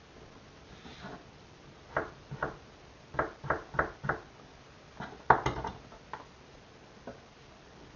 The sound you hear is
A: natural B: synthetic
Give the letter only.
A